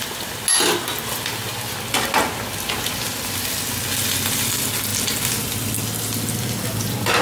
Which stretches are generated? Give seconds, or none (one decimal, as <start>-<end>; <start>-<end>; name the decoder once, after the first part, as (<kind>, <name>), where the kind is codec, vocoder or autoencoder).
none